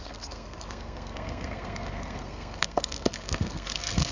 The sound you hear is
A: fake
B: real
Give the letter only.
A